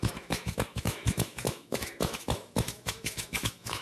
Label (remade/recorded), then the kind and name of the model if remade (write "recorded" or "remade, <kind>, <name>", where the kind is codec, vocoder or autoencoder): remade, autoencoder, DAC-VAE